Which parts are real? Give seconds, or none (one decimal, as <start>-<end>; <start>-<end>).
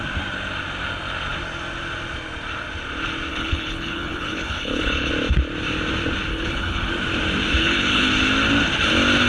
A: 0.0-3.3; 5.1-6.3; 6.9-7.6; 8.1-9.3